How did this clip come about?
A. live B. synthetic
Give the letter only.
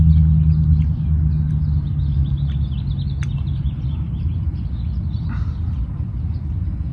A